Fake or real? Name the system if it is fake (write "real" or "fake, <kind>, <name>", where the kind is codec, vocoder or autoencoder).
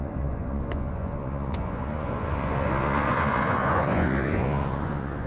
fake, vocoder, Vocos